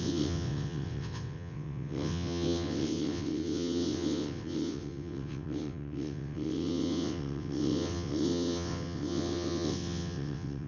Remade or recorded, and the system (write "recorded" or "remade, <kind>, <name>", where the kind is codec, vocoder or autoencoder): remade, vocoder, WaveNeXt